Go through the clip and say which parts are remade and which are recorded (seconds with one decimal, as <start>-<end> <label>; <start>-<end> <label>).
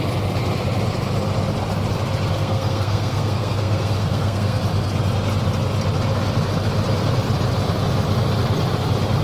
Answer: 0.0-2.3 recorded; 2.3-4.6 remade; 4.6-9.2 recorded